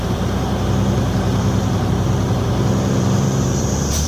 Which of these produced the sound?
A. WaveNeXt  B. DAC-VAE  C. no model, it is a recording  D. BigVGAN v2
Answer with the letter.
D